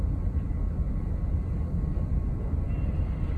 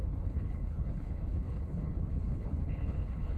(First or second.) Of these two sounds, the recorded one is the first